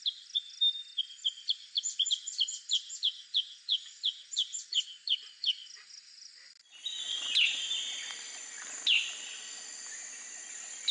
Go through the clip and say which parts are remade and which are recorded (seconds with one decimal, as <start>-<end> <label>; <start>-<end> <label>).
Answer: 0.0-10.9 recorded